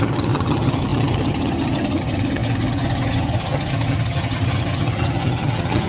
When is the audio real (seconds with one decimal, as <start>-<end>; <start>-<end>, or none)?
none